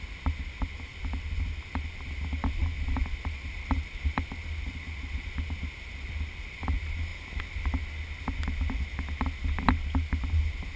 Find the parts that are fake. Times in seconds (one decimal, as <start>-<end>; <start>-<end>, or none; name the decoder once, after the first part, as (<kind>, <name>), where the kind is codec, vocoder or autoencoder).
none